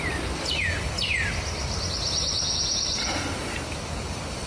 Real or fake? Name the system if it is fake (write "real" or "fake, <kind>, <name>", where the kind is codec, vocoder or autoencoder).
fake, vocoder, BigVGAN v2